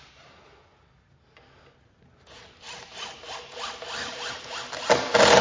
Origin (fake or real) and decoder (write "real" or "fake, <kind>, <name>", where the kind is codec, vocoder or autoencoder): real